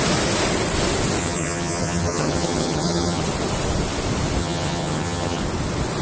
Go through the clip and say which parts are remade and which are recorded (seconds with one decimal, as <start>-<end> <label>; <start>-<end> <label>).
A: 0.0-1.2 recorded; 1.2-3.2 remade; 3.2-4.4 recorded; 4.4-5.4 remade; 5.4-6.0 recorded